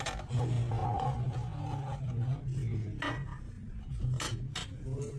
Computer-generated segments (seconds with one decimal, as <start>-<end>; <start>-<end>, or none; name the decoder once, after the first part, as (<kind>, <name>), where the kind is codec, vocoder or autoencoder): none